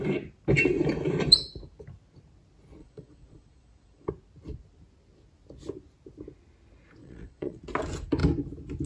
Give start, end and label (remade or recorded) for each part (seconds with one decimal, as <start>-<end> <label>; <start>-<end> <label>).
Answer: 0.0-2.8 recorded; 2.8-4.1 remade; 4.1-7.0 recorded; 7.0-7.6 remade; 7.6-8.9 recorded